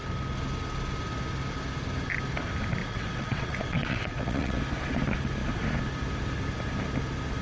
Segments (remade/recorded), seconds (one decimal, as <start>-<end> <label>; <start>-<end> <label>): 0.0-2.8 recorded; 2.8-4.6 remade; 4.6-7.4 recorded